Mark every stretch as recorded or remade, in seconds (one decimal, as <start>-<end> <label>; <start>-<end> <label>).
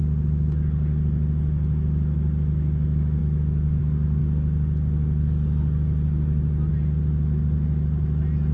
0.0-3.2 recorded; 3.2-3.8 remade; 3.8-8.5 recorded